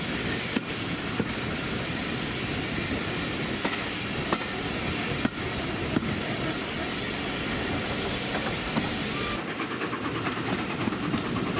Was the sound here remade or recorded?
recorded